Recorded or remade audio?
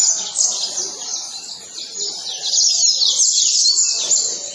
recorded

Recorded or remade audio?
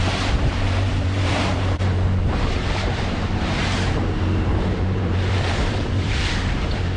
remade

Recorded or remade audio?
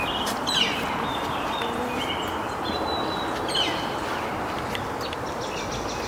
recorded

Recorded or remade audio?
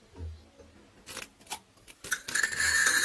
recorded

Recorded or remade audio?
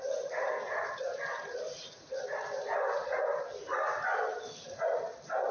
remade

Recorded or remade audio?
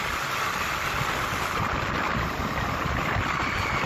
recorded